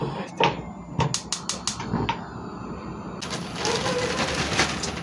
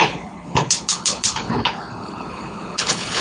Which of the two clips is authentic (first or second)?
first